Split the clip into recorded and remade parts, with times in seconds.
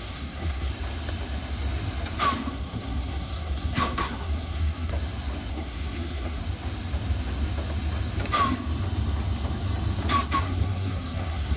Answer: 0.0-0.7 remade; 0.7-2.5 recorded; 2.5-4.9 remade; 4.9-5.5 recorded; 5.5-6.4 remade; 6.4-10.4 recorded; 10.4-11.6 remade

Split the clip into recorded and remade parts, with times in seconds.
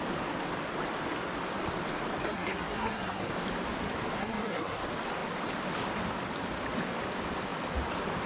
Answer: 0.0-2.2 recorded; 2.2-3.3 remade; 3.3-4.2 recorded; 4.2-4.8 remade; 4.8-8.3 recorded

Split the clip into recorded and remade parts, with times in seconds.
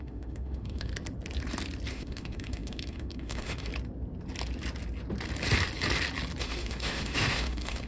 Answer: 0.0-0.9 remade; 0.9-1.9 recorded; 1.9-3.7 remade; 3.7-6.4 recorded; 6.4-7.9 remade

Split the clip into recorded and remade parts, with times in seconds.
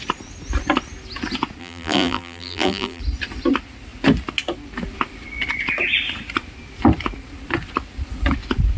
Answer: 0.0-1.6 recorded; 1.6-3.0 remade; 3.0-8.8 recorded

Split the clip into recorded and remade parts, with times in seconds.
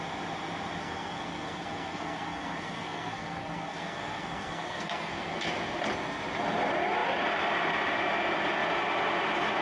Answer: 0.0-0.8 recorded; 0.8-5.5 remade; 5.5-9.6 recorded